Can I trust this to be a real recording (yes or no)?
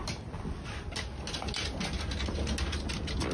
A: yes